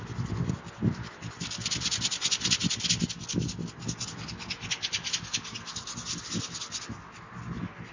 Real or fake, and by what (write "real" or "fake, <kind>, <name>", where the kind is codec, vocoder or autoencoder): real